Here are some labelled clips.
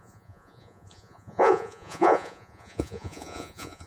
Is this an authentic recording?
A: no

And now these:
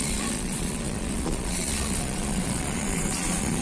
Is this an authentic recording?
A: no